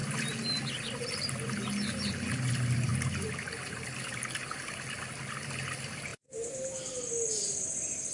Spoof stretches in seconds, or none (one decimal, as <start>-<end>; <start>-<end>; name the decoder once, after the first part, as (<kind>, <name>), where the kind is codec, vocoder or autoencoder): none